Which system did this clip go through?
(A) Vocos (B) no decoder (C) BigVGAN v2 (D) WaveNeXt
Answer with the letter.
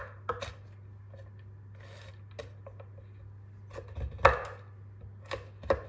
B